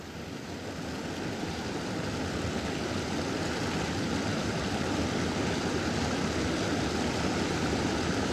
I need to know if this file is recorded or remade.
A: recorded